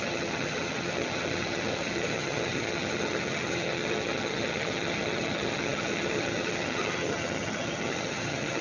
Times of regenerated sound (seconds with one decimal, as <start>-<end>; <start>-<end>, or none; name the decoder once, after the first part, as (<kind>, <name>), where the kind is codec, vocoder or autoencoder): 0.0-8.6 (vocoder, HiFi-GAN)